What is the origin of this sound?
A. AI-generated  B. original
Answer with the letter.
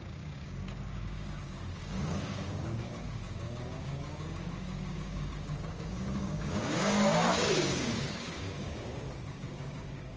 A